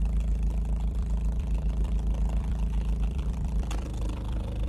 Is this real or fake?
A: fake